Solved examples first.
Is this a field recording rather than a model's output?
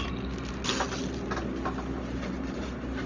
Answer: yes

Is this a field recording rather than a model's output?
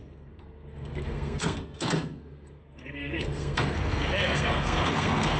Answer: no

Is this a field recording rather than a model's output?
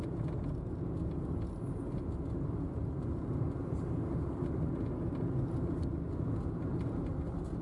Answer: yes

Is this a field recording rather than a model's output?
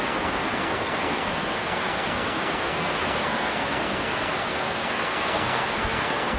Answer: no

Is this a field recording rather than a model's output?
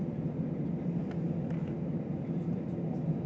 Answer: yes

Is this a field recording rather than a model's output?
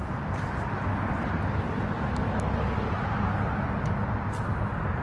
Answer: yes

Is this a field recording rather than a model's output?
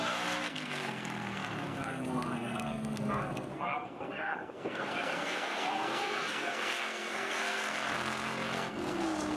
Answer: no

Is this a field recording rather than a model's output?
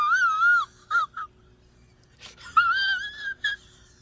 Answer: yes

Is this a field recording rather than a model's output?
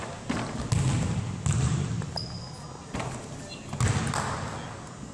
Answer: yes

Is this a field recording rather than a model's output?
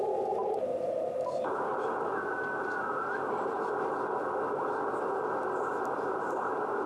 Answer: yes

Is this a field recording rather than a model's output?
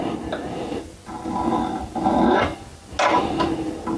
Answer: yes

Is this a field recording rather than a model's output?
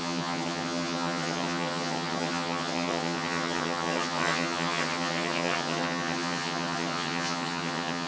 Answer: no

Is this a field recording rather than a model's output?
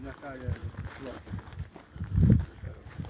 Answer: yes